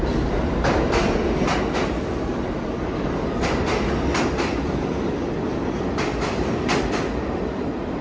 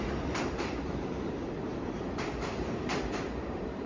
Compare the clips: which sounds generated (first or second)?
second